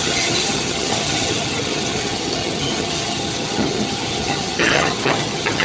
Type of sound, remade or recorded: remade